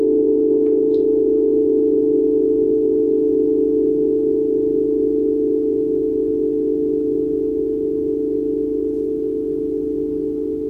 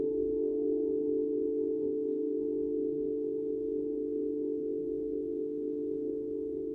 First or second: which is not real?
second